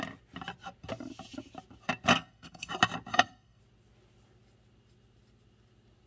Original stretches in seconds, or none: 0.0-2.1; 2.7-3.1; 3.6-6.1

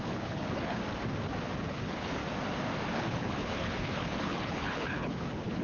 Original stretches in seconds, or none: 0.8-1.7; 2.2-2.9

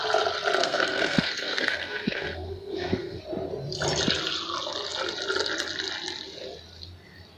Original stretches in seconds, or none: 0.0-0.6; 3.2-7.4